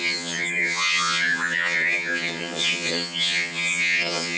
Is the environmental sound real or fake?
fake